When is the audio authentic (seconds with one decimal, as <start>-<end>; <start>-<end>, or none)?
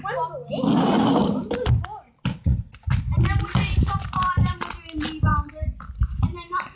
0.0-2.3; 2.9-6.8